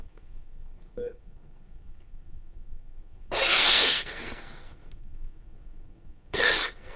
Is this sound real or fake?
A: fake